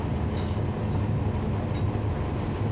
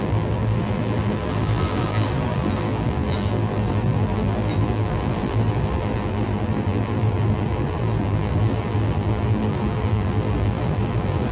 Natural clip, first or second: first